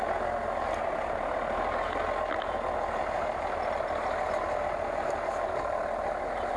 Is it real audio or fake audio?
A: real